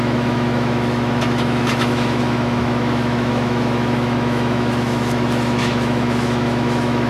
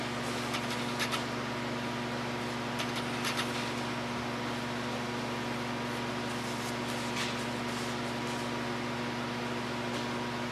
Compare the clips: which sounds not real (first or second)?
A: first